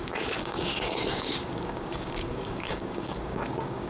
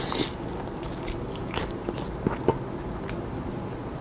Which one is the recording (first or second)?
second